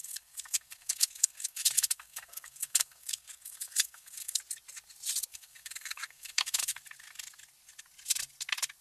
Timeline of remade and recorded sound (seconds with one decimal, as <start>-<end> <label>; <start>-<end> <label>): 0.0-4.4 remade; 4.4-5.3 recorded; 5.3-6.8 remade; 6.8-8.8 recorded